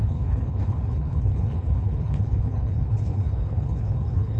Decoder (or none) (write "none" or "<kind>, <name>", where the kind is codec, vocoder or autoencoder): codec, HILCodec